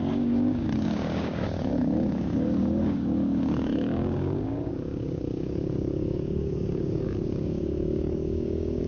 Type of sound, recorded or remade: remade